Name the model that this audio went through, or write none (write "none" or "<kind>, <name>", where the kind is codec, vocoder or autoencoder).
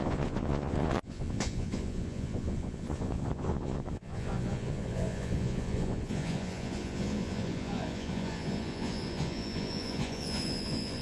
vocoder, Vocos